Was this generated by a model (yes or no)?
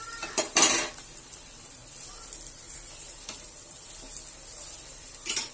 yes